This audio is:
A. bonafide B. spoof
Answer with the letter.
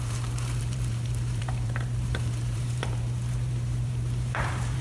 B